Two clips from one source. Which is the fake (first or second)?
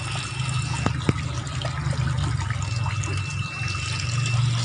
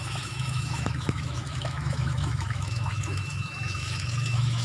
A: second